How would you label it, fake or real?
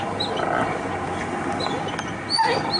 real